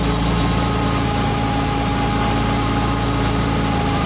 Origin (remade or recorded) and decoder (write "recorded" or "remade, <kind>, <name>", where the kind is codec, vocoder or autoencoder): recorded